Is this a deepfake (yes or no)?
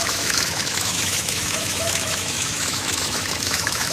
yes